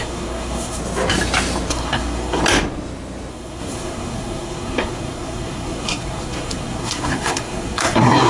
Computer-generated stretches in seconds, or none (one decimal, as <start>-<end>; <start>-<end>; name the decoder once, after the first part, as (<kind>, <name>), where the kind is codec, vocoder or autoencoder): 0.0-0.8 (codec, SNAC); 1.7-2.4; 3.3-8.3